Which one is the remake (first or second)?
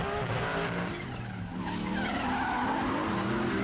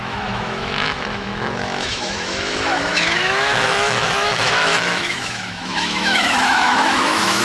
second